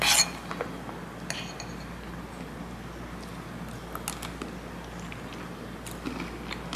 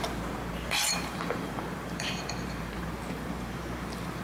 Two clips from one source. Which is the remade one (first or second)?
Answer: second